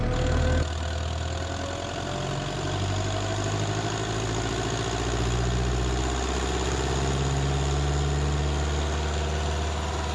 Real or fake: real